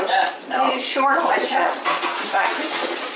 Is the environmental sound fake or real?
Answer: fake